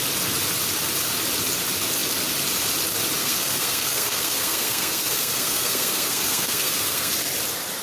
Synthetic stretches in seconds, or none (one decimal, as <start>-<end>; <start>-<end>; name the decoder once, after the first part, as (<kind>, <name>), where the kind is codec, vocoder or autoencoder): 3.2-7.1 (codec, SNAC)